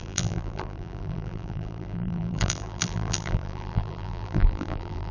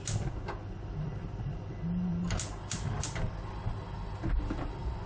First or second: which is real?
second